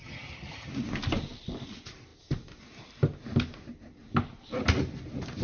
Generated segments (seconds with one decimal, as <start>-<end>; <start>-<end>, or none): 0.0-0.7